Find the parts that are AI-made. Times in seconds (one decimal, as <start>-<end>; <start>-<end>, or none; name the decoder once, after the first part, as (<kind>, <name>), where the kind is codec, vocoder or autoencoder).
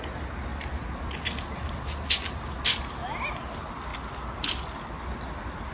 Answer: none